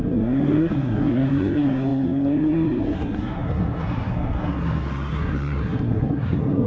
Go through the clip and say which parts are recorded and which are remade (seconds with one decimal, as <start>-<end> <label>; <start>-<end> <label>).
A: 0.0-6.7 remade